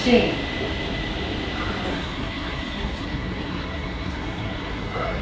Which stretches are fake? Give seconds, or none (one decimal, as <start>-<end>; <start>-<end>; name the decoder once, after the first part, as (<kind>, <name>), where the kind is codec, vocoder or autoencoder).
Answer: 1.9-5.2 (codec, SNAC)